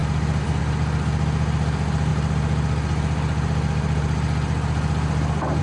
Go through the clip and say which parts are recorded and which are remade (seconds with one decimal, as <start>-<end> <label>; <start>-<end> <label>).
0.0-5.6 recorded